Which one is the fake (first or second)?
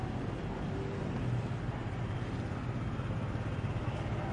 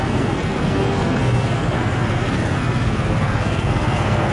second